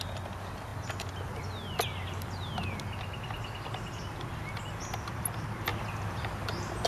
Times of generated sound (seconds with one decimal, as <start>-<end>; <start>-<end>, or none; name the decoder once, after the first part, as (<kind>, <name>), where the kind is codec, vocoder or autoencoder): none